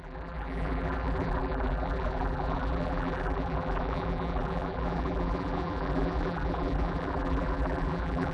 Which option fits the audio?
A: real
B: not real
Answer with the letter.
B